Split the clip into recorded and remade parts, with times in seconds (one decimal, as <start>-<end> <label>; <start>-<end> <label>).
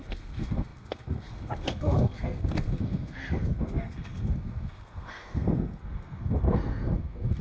0.0-7.4 remade